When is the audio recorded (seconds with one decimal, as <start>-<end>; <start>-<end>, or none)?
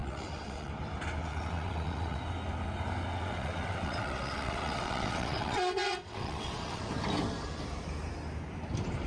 0.7-1.2; 2.2-3.1; 6.8-9.1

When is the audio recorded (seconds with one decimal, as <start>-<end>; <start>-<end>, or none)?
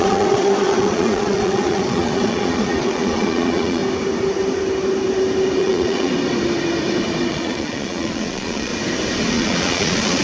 3.8-5.6; 6.1-7.3; 8.7-9.3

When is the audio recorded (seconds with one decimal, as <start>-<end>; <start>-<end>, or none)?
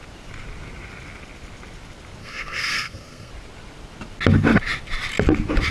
0.0-2.2; 3.3-5.7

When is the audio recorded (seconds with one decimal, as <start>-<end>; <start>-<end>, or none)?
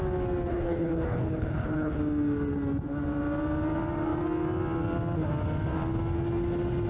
0.0-0.5; 2.0-6.9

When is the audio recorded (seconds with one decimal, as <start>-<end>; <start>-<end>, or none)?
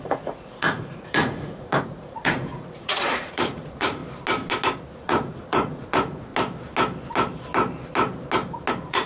4.0-5.0; 6.3-8.7